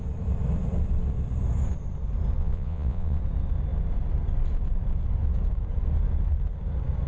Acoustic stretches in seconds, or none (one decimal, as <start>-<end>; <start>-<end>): 0.0-2.4; 3.2-7.1